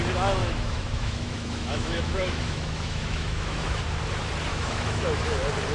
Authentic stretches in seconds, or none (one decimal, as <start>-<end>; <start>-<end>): 0.0-0.4; 3.8-4.5; 5.2-5.7